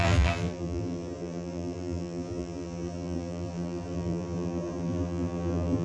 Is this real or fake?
fake